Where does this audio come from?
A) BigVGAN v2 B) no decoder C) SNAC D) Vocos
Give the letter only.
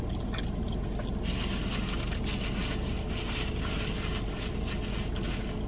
B